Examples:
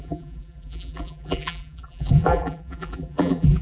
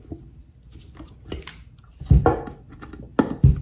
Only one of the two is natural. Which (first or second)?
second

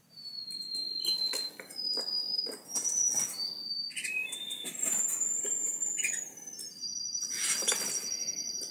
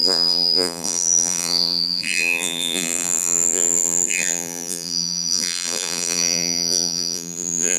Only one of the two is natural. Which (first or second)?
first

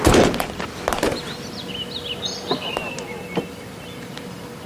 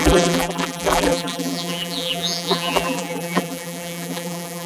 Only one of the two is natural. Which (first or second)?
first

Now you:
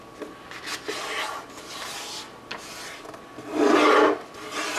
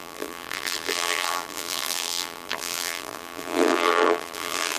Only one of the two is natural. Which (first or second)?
first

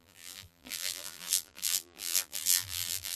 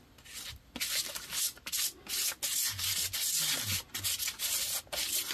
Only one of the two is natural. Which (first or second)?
second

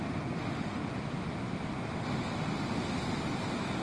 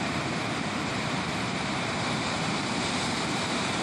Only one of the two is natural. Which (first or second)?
first